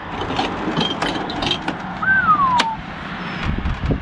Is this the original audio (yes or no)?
yes